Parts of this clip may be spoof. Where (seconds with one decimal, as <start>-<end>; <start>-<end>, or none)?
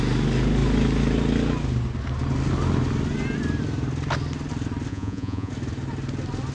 4.9-5.5